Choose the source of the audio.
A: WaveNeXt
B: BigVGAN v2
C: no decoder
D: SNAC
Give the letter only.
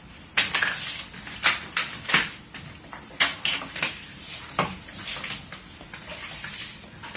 B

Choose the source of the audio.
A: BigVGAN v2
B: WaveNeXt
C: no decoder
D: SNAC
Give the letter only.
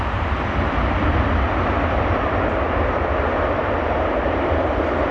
A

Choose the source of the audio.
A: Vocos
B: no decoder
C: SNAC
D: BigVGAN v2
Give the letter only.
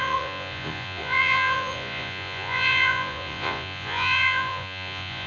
A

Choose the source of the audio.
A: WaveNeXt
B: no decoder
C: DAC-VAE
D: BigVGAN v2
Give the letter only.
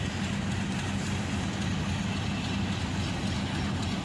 B